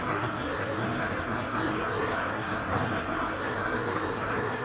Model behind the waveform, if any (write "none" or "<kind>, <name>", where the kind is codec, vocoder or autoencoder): codec, SNAC